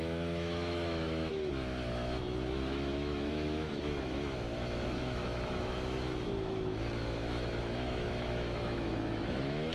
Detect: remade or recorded remade